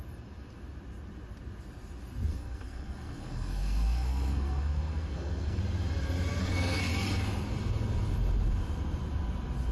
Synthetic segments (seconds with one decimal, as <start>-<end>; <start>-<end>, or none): 2.3-5.6; 6.4-6.9